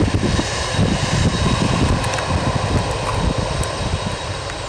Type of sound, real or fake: real